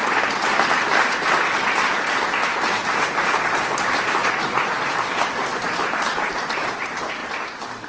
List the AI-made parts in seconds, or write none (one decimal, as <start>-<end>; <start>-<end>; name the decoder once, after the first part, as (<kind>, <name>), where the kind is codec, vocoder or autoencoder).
4.2-4.8 (vocoder, Vocos)